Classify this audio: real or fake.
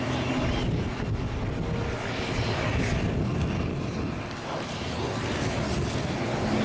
real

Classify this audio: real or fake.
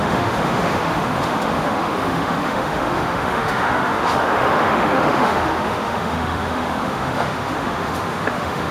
fake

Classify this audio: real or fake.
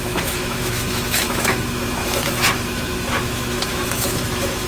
fake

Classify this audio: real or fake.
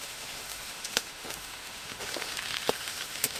fake